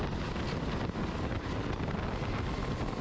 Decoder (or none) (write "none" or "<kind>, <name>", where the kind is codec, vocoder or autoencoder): none